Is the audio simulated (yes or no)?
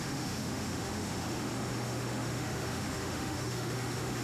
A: yes